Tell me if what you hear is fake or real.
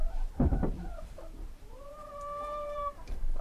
fake